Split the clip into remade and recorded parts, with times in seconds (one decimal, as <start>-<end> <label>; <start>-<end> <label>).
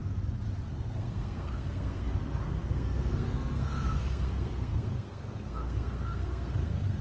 0.0-0.7 recorded; 0.7-7.0 remade